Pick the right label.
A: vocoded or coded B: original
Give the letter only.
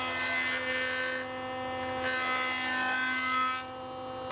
B